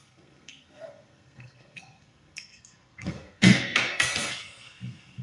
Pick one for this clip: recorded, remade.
remade